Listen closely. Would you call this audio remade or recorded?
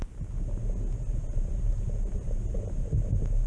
recorded